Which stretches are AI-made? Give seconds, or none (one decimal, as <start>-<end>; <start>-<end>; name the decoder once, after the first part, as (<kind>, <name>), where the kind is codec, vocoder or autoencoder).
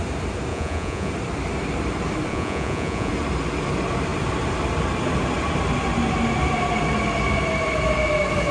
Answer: 0.5-1.1 (vocoder, Vocos); 2.3-3.1